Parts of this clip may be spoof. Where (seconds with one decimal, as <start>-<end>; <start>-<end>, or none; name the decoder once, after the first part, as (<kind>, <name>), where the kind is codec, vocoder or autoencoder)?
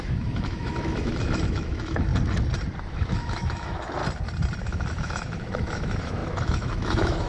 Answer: 0.0-2.1 (autoencoder, DAC-VAE); 2.8-4.0; 4.6-7.3